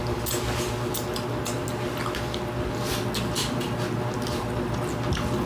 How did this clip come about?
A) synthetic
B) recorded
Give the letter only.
B